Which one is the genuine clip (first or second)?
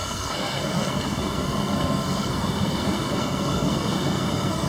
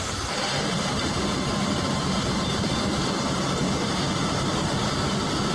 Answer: second